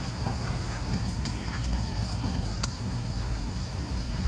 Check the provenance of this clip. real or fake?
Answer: fake